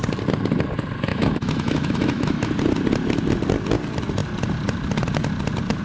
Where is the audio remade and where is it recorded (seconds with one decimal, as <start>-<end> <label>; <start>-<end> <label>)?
0.0-1.1 recorded; 1.1-2.5 remade; 2.5-5.8 recorded